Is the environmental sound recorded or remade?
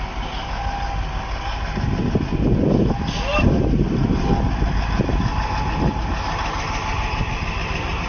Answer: recorded